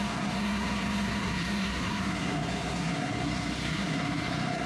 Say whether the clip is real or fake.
fake